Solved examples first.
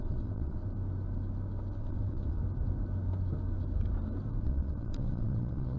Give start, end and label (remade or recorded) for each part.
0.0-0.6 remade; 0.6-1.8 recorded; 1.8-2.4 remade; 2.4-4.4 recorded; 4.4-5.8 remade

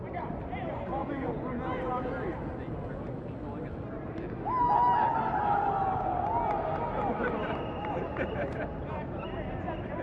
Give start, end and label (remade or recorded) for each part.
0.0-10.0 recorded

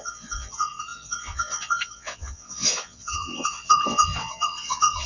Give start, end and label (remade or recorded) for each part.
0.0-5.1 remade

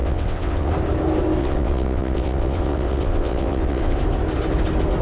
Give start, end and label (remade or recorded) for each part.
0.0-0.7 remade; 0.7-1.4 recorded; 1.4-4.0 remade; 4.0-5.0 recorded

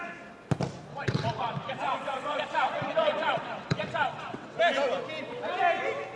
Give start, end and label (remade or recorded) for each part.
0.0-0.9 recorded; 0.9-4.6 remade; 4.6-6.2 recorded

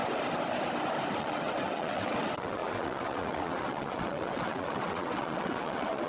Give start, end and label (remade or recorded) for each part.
0.0-1.2 recorded; 1.2-6.1 remade